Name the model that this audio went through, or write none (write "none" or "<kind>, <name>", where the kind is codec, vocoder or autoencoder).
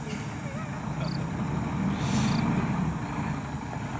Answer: none